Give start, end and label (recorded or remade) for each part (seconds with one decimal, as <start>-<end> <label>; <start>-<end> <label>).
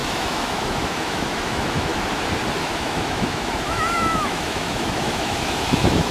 0.0-1.9 remade; 1.9-2.6 recorded; 2.6-6.1 remade